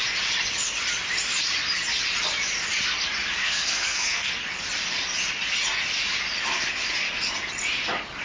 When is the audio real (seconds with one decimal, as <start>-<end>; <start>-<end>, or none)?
0.0-3.4; 4.3-8.2